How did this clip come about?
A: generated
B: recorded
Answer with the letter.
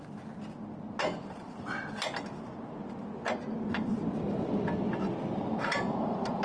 B